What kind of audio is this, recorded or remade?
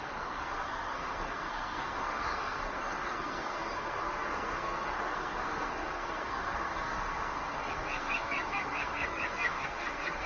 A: remade